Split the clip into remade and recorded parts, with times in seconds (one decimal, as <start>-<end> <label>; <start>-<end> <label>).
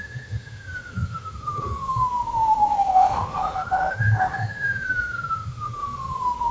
0.0-6.5 remade